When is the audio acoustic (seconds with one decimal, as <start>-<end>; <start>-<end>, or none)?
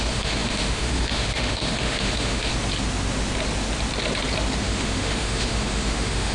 2.5-4.6